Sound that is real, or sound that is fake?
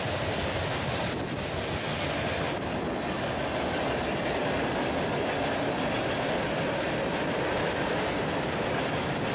real